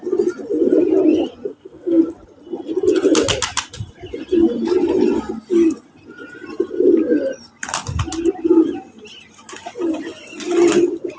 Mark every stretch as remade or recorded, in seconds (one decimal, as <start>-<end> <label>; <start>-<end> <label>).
0.0-1.5 recorded; 1.5-2.0 remade; 2.0-11.2 recorded